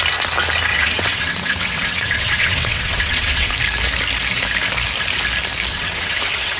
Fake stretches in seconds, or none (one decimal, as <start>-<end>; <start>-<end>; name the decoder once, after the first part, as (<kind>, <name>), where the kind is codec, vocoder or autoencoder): 0.7-3.5 (vocoder, WaveNeXt); 5.7-6.6